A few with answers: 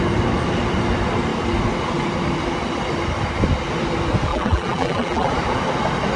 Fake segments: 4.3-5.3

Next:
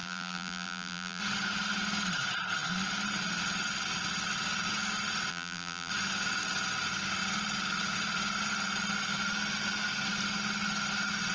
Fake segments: 0.0-1.2; 5.3-5.9

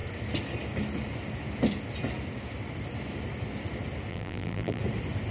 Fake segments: 4.1-4.8

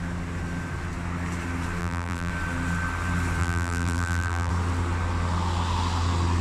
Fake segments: 1.8-2.3; 3.4-4.5

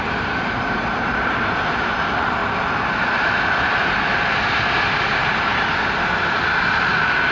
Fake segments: 0.0-2.4; 6.8-7.3

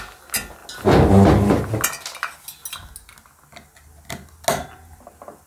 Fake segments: none

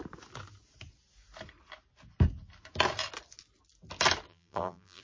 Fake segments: 4.3-5.0

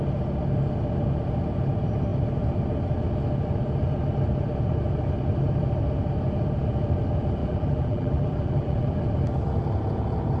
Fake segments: 7.4-9.0